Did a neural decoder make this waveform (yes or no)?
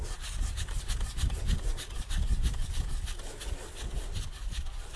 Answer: no